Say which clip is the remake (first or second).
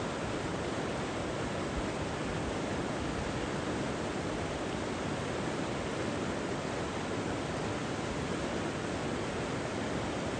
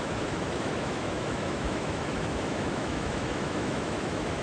second